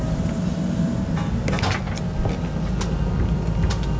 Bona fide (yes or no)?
yes